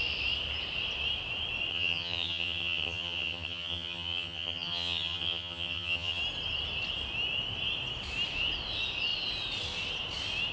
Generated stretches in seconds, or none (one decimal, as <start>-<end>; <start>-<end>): 1.7-6.2